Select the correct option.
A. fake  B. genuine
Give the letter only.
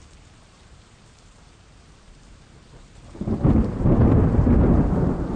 A